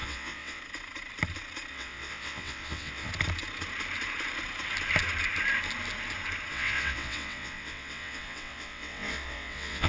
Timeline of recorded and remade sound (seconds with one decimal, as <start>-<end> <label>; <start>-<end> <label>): 0.0-0.6 remade; 0.6-1.7 recorded; 1.7-3.1 remade; 3.1-6.5 recorded; 6.5-9.9 remade